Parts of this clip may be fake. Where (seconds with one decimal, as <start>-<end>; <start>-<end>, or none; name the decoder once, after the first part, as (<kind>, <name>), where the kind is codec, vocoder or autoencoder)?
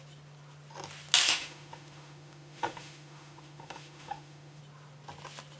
1.2-4.6 (autoencoder, DAC-VAE)